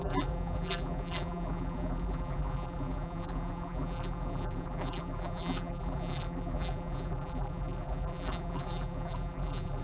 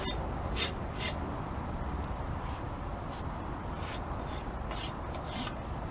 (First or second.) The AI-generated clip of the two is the first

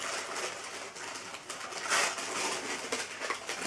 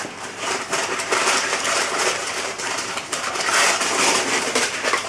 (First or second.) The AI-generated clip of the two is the second